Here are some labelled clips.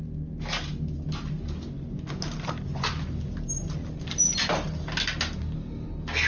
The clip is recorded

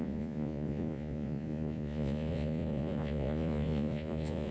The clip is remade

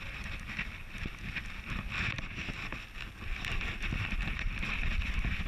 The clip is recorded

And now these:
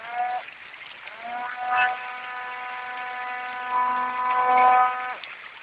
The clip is recorded